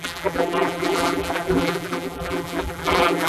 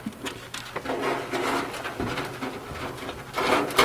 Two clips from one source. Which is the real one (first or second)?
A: second